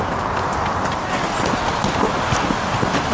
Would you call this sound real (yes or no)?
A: yes